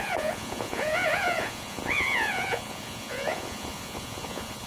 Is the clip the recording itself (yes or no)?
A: no